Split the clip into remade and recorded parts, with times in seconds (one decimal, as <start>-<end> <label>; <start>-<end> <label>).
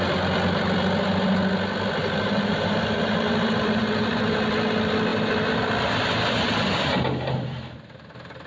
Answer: 0.0-2.0 recorded; 2.0-4.5 remade; 4.5-5.1 recorded; 5.1-5.6 remade; 5.6-8.5 recorded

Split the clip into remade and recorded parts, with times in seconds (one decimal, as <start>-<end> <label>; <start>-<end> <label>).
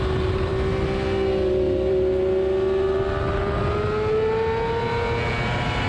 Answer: 0.0-5.9 recorded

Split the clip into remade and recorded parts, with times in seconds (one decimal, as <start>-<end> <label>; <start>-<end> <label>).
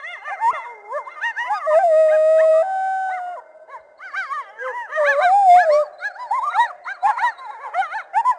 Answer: 0.0-8.4 recorded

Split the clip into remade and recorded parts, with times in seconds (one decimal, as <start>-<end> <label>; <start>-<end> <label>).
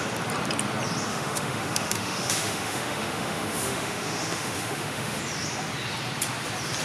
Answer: 0.0-1.1 recorded; 1.1-5.2 remade; 5.2-6.8 recorded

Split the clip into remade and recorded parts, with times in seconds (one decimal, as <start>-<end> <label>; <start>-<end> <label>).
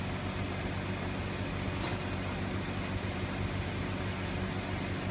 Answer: 0.0-5.1 recorded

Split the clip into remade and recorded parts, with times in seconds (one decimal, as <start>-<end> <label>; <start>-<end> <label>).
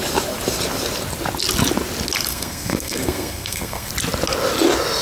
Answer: 0.0-2.3 recorded; 2.3-3.9 remade; 3.9-5.0 recorded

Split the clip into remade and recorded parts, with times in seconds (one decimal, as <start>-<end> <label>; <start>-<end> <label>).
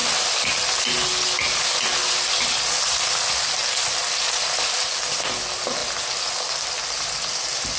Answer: 0.0-0.8 remade; 0.8-7.8 recorded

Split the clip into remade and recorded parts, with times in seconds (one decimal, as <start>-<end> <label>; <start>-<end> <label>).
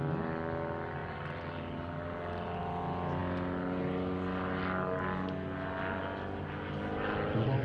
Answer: 0.0-7.6 recorded